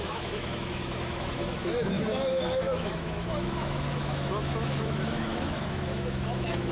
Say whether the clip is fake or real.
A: fake